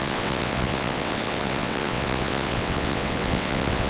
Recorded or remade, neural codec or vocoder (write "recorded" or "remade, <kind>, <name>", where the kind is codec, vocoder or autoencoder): remade, vocoder, WaveNeXt